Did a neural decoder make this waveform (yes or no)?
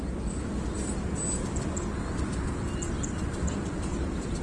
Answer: no